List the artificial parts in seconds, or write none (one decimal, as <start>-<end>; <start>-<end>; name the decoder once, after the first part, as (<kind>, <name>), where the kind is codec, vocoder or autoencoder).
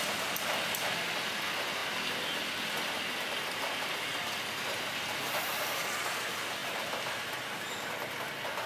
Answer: none